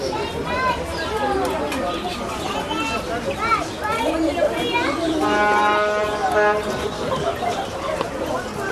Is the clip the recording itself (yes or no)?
yes